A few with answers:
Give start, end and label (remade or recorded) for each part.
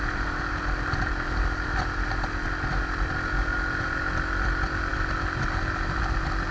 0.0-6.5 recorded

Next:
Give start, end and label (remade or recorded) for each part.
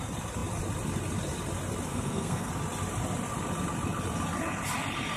0.0-1.9 recorded; 1.9-2.5 remade; 2.5-5.2 recorded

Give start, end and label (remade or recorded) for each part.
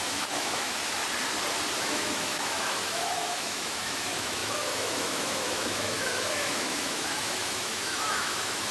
0.0-1.0 remade; 1.0-1.8 recorded; 1.8-8.7 remade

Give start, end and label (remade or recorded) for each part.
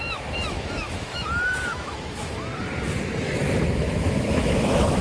0.0-2.5 remade; 2.5-3.2 recorded; 3.2-5.0 remade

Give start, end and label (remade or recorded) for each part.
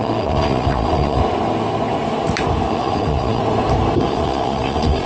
0.0-1.2 remade; 1.2-2.7 recorded; 2.7-3.4 remade; 3.4-4.0 recorded; 4.0-5.1 remade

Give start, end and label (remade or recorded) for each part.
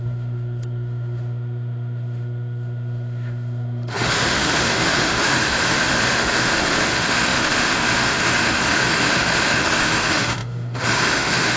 0.0-11.6 remade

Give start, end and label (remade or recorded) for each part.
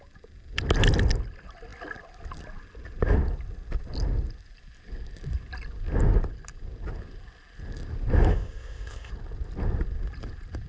0.0-8.3 recorded; 8.3-9.1 remade; 9.1-10.7 recorded